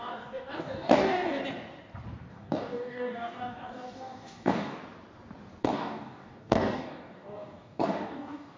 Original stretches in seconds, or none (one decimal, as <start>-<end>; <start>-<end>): 1.4-2.3; 4.8-5.6